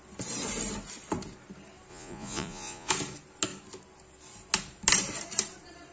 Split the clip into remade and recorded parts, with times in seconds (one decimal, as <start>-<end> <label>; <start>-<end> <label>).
0.0-1.9 recorded; 1.9-2.9 remade; 2.9-5.9 recorded